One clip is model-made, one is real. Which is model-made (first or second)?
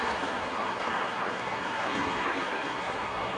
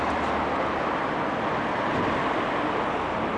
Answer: first